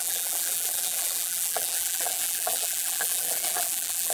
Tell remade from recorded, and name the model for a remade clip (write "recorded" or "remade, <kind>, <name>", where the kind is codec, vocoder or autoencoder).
remade, vocoder, BigVGAN v2